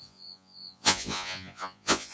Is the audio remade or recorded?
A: remade